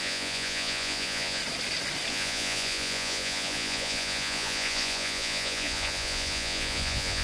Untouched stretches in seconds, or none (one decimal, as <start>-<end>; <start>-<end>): 1.4-2.1